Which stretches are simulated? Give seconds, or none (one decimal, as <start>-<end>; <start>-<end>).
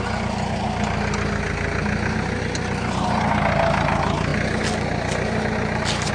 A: none